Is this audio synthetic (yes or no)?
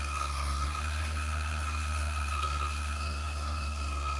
yes